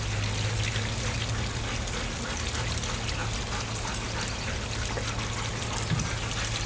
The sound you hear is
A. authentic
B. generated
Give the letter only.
A